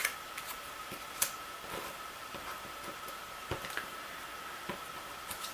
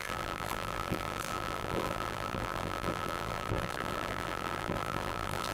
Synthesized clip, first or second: second